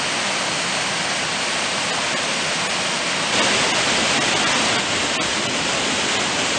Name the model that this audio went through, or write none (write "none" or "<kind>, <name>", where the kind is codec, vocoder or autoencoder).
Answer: none